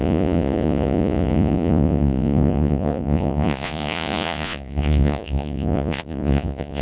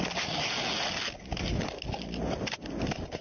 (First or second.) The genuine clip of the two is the second